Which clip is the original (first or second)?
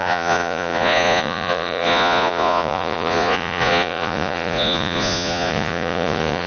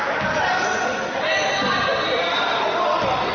second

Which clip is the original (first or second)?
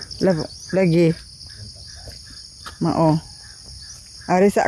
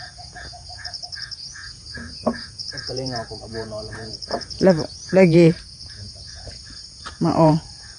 first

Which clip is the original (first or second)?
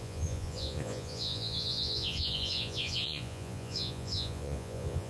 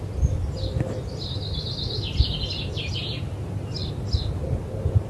second